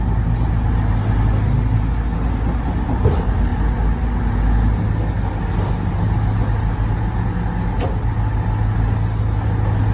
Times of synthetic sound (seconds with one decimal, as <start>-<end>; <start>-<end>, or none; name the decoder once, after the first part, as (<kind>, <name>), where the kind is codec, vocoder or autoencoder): none